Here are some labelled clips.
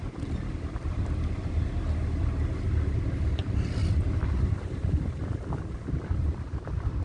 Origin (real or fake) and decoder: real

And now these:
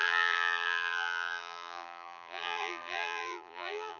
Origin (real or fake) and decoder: fake, vocoder, BigVGAN v2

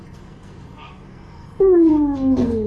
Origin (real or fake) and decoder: fake, codec, SNAC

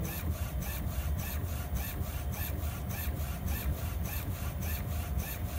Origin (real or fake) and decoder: fake, vocoder, BigVGAN v2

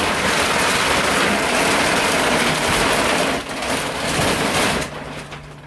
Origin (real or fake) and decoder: fake, vocoder, BigVGAN v2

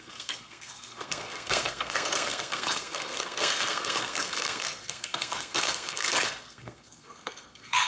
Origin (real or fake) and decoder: fake, codec, SNAC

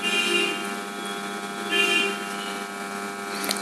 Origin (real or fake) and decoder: real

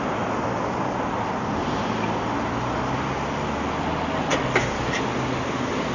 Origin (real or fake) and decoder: real